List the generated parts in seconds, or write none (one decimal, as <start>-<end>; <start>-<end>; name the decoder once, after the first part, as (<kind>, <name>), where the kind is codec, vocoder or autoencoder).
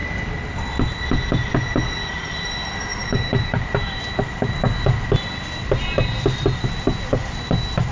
2.9-4.0 (vocoder, BigVGAN v2)